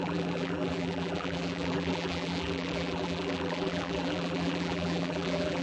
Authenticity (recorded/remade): remade